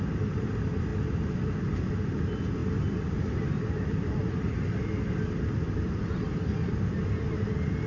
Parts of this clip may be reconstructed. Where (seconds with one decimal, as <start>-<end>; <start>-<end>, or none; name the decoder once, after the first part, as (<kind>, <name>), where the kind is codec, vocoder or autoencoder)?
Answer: none